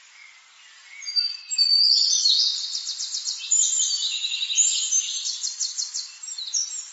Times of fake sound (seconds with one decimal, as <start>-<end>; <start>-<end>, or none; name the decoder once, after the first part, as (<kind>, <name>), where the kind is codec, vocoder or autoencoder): 2.0-5.9 (vocoder, BigVGAN v2)